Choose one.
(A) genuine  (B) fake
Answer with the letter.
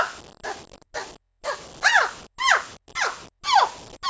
A